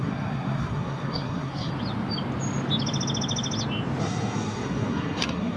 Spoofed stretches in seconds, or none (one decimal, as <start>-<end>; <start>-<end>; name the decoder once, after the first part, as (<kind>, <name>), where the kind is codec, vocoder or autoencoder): 0.0-1.7 (codec, SNAC); 4.0-5.6